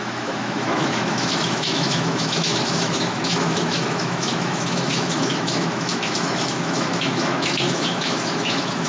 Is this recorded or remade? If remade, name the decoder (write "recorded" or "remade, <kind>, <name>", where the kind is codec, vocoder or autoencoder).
remade, autoencoder, DAC-VAE